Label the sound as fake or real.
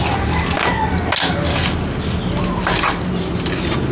real